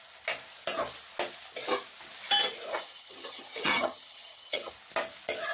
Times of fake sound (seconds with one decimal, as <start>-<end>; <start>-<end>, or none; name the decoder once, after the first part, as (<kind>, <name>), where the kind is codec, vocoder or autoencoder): 2.7-4.7 (vocoder, HiFi-GAN)